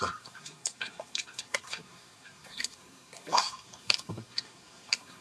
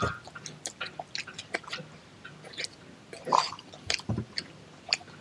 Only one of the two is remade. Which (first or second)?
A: first